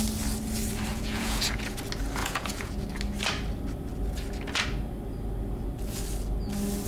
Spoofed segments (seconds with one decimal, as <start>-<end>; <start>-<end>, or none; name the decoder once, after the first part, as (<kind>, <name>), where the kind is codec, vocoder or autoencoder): 0.9-1.8 (vocoder, Vocos); 2.2-2.7